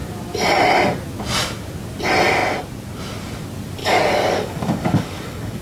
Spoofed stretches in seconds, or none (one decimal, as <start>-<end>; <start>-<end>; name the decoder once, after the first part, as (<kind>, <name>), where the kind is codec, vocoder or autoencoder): 3.8-5.6 (codec, DAC)

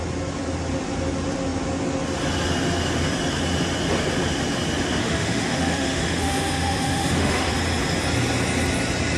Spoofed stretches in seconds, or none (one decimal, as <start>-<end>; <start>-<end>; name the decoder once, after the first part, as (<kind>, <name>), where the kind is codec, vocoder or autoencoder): 5.0-7.5 (autoencoder, DAC-VAE)

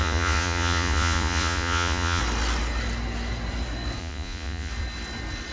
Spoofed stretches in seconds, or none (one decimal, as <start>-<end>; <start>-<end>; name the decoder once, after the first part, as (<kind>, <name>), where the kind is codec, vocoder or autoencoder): 0.0-2.2 (vocoder, Vocos); 4.0-4.7

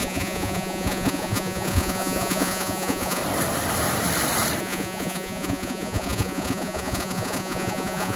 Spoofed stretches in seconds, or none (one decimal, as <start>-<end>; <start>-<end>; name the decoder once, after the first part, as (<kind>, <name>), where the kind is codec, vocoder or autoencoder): 0.0-3.2 (vocoder, Vocos); 4.6-8.2

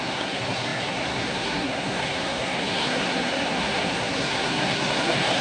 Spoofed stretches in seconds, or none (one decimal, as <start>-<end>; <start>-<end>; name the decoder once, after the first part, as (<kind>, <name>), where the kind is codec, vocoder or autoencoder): 0.0-5.4 (codec, SNAC)

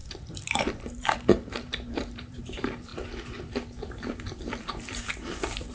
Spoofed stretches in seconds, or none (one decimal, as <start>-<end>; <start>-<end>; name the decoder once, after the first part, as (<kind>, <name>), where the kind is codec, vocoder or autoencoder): 0.0-2.9 (vocoder, BigVGAN v2); 4.6-5.7